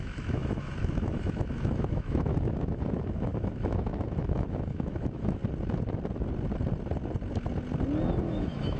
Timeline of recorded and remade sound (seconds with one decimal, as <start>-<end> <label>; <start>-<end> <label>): 0.0-5.4 remade; 5.4-8.2 recorded; 8.2-8.8 remade